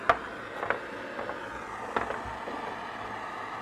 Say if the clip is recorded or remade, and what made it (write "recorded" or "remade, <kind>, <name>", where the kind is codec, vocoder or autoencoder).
recorded